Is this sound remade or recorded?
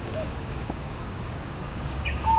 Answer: remade